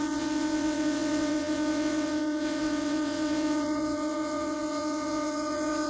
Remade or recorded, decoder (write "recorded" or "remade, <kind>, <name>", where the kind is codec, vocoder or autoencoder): remade, vocoder, WaveNeXt